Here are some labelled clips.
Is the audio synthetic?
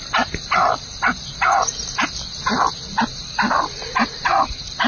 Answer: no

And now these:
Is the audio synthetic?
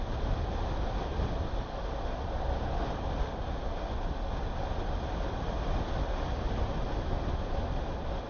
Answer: no